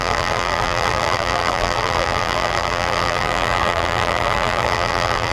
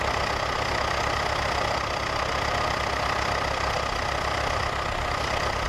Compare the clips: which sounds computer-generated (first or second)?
first